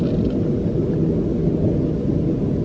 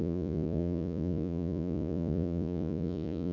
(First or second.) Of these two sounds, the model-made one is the second